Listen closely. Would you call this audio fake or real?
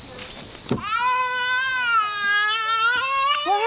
real